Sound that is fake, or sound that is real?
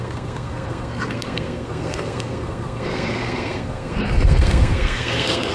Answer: fake